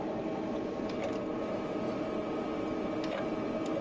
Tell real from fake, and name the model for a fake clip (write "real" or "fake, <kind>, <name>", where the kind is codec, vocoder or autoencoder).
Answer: real